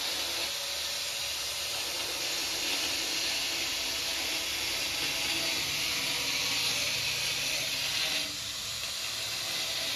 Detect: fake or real real